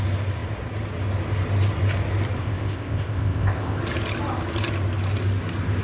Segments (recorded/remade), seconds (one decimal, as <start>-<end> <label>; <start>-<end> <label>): 0.0-2.4 recorded; 2.4-3.8 remade; 3.8-5.8 recorded